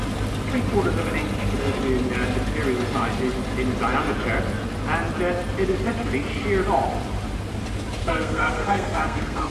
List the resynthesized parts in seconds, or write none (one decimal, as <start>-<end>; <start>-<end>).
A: 8.0-9.5